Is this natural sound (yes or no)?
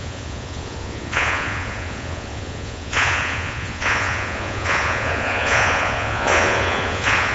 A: no